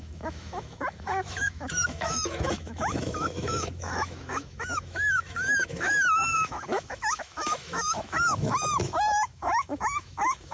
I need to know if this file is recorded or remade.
remade